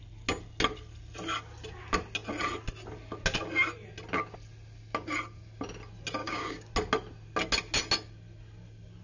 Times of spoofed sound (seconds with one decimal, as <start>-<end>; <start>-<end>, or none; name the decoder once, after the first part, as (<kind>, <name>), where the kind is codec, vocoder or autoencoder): 6.2-6.7 (codec, DAC)